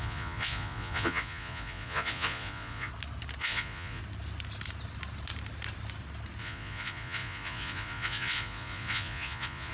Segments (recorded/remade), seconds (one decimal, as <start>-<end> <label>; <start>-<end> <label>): 0.0-2.9 remade; 2.9-3.4 recorded; 3.4-4.0 remade; 4.0-6.4 recorded; 6.4-9.7 remade